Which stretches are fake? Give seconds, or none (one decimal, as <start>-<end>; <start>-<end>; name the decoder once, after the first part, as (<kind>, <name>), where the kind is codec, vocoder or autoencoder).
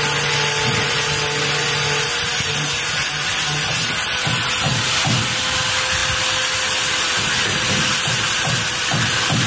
none